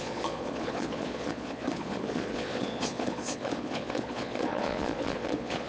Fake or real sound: fake